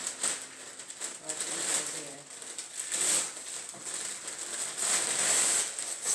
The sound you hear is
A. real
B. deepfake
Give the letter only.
A